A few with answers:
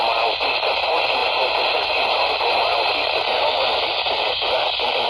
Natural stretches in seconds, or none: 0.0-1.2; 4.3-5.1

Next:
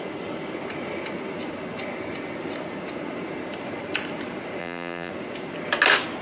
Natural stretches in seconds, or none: 0.0-4.6; 5.1-6.2

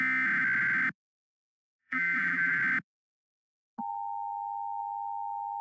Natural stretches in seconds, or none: 0.0-1.8; 2.6-5.6